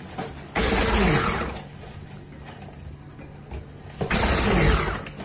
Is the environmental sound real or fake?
real